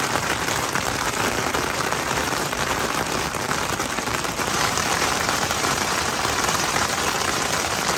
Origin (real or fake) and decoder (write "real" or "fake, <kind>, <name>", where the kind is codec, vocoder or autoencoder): fake, vocoder, BigVGAN v2